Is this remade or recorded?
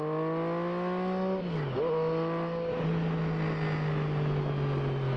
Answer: recorded